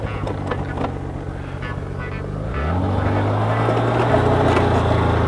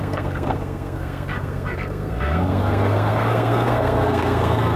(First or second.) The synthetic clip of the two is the second